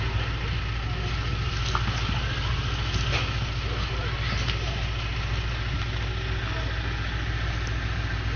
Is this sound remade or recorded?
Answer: recorded